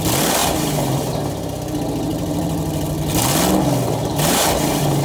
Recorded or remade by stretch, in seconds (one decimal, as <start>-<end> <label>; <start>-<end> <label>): 0.0-0.4 recorded; 0.4-1.1 remade; 1.1-2.1 recorded; 2.1-2.8 remade; 2.8-4.0 recorded; 4.0-5.0 remade